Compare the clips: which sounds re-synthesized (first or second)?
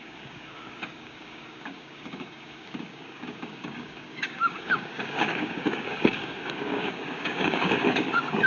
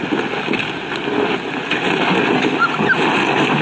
first